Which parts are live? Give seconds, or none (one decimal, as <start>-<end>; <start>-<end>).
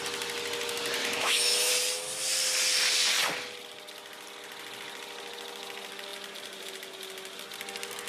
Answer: 0.0-1.0; 1.7-8.1